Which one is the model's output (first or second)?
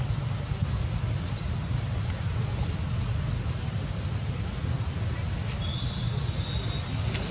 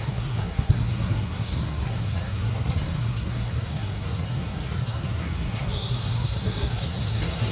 second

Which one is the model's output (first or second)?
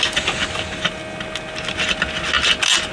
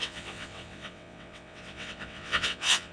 second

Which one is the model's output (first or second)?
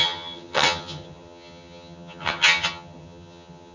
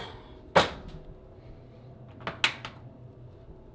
first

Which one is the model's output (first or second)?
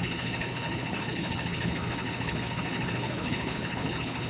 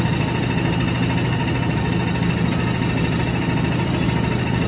first